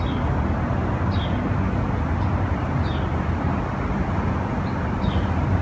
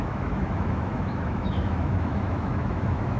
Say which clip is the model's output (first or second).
second